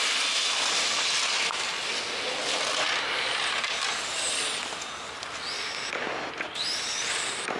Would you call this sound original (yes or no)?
yes